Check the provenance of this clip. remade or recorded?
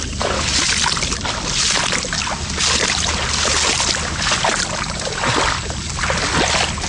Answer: recorded